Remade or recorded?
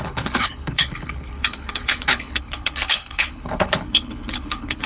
remade